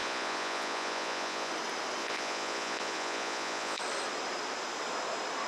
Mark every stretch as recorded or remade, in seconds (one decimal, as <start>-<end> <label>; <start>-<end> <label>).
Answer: 0.0-1.5 remade; 1.5-2.0 recorded; 2.0-3.8 remade; 3.8-5.5 recorded